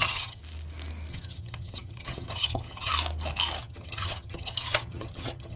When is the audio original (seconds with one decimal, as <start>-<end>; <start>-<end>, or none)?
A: 0.4-1.1; 2.9-3.6